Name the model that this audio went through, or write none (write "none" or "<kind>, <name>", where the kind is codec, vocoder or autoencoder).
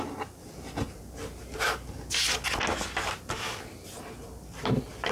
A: none